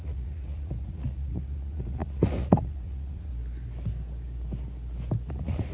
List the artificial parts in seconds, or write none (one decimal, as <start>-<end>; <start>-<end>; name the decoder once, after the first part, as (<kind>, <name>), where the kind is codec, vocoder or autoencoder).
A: 0.0-3.3 (vocoder, Vocos); 5.3-5.7